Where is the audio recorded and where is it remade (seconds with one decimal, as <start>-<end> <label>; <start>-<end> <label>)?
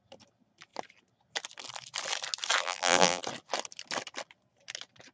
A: 0.0-2.6 recorded; 2.6-3.2 remade; 3.2-5.1 recorded